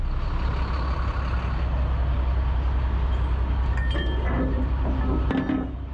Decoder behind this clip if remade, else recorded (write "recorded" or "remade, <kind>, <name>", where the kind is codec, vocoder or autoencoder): recorded